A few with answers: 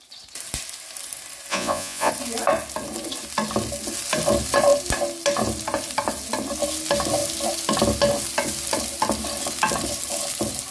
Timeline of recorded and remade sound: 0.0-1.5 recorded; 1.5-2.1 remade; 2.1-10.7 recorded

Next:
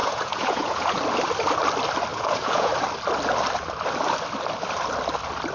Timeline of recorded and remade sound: 0.0-1.0 remade; 1.0-2.1 recorded; 2.1-2.7 remade; 2.7-5.5 recorded

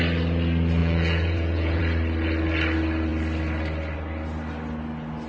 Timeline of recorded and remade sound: 0.0-0.8 recorded; 0.8-1.8 remade; 1.8-5.3 recorded